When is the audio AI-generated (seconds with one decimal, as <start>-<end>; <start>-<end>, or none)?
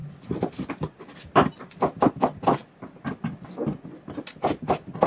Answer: 1.6-2.6; 3.6-5.1